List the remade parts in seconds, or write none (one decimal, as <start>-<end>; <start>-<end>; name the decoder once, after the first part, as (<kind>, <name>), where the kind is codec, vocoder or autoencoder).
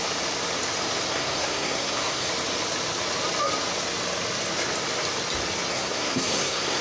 1.1-2.3 (codec, SNAC); 5.7-6.8